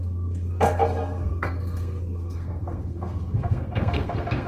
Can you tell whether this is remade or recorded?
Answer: remade